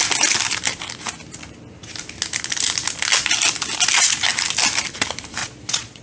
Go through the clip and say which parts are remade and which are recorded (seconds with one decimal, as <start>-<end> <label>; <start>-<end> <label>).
0.0-5.4 recorded; 5.4-6.0 remade